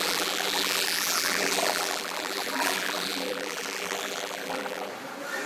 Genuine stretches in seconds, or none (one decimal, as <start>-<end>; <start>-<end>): 4.9-5.5